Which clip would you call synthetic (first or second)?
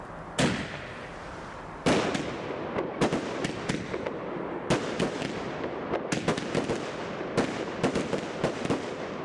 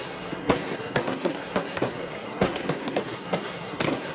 second